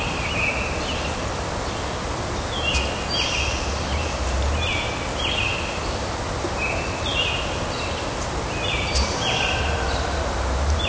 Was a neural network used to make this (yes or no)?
no